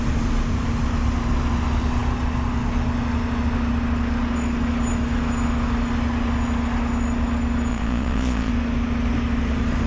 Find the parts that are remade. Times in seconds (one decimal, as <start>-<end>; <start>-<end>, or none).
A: 7.7-8.5